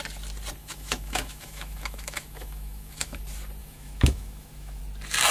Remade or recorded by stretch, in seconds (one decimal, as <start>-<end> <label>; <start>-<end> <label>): 0.0-0.6 recorded; 0.6-3.2 remade; 3.2-3.6 recorded; 3.6-4.8 remade; 4.8-5.3 recorded

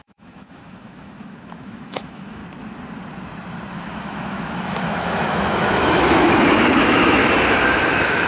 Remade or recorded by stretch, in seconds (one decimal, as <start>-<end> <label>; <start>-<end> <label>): 0.0-2.4 remade; 2.4-3.7 recorded; 3.7-7.2 remade; 7.2-7.9 recorded; 7.9-8.3 remade

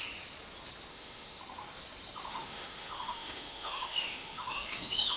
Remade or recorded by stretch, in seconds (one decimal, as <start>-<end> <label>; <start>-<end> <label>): 0.0-0.9 recorded; 0.9-1.4 remade; 1.4-2.3 recorded; 2.3-5.2 remade